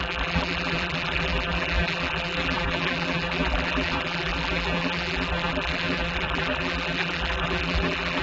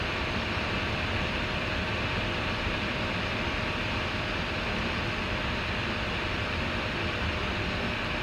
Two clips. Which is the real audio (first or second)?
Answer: second